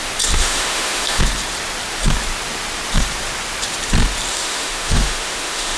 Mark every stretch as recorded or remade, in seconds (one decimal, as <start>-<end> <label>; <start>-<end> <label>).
0.0-0.4 recorded; 0.4-1.2 remade; 1.2-4.3 recorded; 4.3-5.8 remade